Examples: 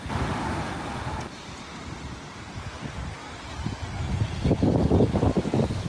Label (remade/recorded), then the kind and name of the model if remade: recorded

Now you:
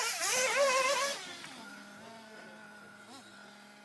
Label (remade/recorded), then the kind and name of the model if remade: recorded